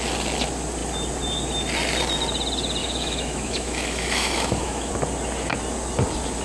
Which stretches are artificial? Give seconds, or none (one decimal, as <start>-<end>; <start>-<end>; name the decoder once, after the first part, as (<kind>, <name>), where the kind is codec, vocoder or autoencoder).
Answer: 2.8-4.9 (autoencoder, DAC-VAE)